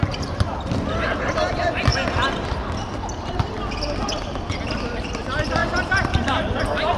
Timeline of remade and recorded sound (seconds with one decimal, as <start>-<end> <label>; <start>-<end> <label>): 0.0-5.6 recorded; 5.6-6.6 remade; 6.6-7.0 recorded